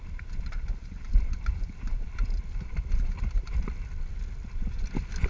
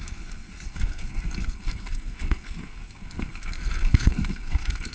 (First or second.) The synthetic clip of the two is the second